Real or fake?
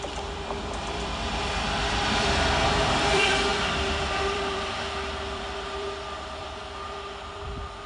fake